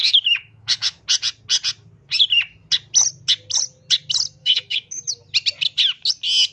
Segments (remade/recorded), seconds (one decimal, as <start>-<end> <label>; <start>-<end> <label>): 0.0-1.0 remade; 1.0-4.4 recorded; 4.4-5.1 remade; 5.1-6.5 recorded